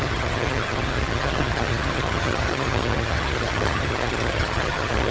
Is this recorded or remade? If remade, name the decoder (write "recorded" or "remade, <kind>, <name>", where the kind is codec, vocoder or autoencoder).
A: remade, vocoder, HiFi-GAN